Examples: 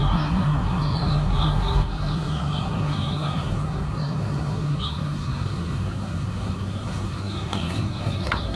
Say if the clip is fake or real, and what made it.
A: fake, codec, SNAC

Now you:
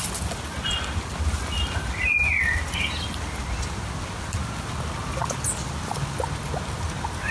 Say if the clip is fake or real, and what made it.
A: real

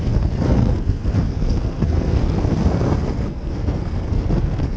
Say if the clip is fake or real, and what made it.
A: fake, codec, SNAC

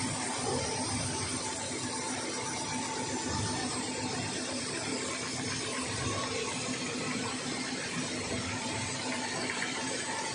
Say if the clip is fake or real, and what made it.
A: real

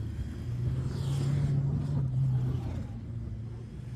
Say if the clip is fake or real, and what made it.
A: real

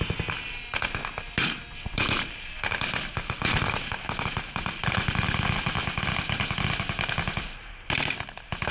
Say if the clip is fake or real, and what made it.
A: real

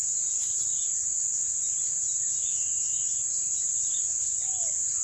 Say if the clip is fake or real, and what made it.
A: real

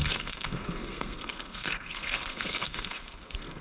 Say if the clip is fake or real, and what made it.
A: fake, codec, SNAC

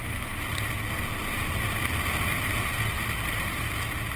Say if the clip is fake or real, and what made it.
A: real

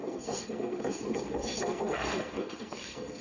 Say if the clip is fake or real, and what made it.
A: fake, codec, SNAC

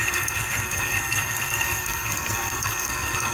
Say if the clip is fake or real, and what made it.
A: fake, codec, SNAC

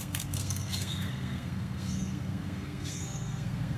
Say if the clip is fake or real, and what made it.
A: fake, codec, SNAC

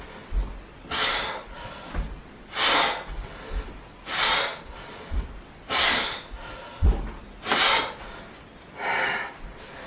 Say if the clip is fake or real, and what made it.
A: real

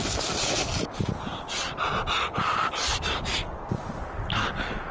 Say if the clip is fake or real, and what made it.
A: real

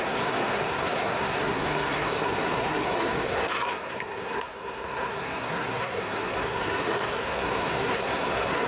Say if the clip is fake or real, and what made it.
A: fake, codec, SNAC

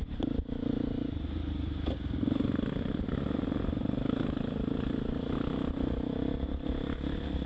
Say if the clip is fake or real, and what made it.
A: real